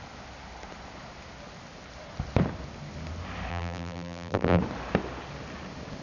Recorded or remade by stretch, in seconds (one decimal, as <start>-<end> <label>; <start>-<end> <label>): 0.0-3.5 recorded; 3.5-4.6 remade; 4.6-6.0 recorded